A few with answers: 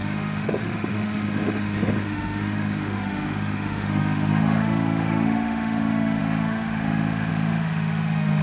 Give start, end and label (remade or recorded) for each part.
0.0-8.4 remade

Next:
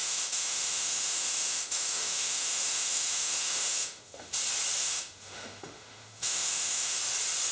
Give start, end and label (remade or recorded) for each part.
0.0-4.3 remade; 4.3-4.8 recorded; 4.8-7.0 remade; 7.0-7.5 recorded